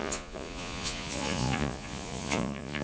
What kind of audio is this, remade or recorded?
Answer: remade